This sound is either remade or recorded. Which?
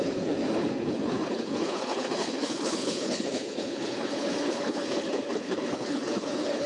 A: remade